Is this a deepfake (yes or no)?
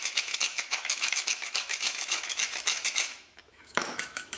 yes